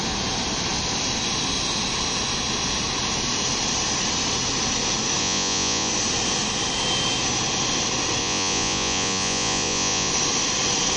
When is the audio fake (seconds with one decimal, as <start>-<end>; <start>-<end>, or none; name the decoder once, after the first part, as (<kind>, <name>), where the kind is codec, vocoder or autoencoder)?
5.2-5.9 (vocoder, Vocos); 8.2-10.1